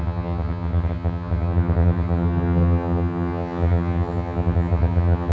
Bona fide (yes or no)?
no